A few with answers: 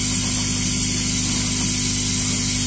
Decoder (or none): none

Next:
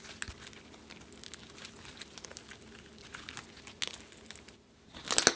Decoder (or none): none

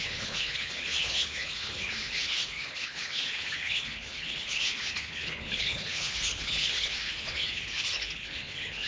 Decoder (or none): codec, HILCodec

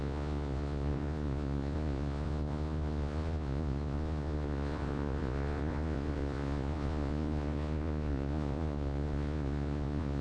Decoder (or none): vocoder, Vocos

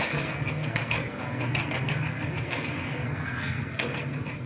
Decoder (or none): codec, SNAC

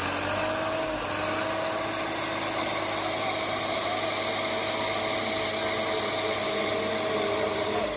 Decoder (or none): none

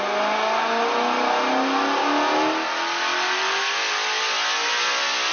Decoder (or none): none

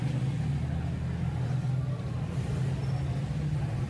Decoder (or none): none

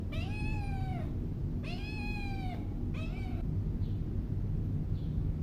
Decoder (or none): none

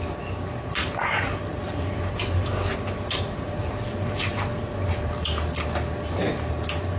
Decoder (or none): none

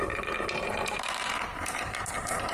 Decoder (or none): vocoder, BigVGAN v2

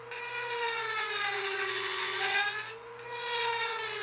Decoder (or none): vocoder, Vocos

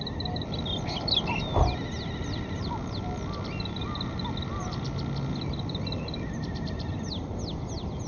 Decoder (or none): none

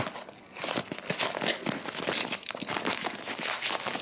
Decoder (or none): none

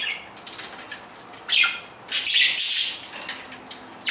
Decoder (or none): none